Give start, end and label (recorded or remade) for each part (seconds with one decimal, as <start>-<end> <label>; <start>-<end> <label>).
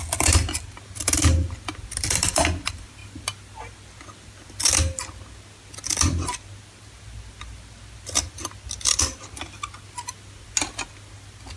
0.0-11.6 recorded